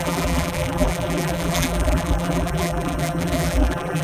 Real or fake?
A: fake